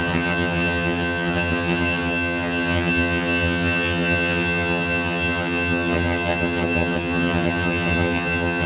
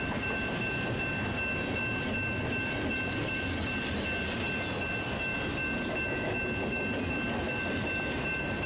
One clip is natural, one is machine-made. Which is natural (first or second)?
second